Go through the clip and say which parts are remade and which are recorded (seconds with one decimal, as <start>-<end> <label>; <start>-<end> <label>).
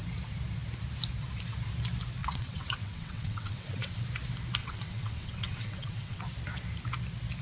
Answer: 0.0-2.2 recorded; 2.2-4.0 remade; 4.0-4.6 recorded; 4.6-6.2 remade; 6.2-7.4 recorded